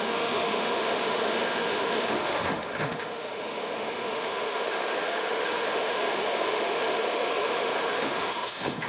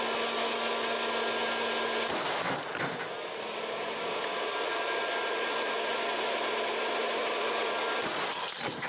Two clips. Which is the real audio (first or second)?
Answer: second